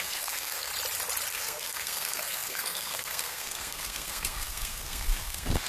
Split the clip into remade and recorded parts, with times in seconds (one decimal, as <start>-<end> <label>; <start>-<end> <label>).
0.0-0.7 remade; 0.7-1.3 recorded; 1.3-5.7 remade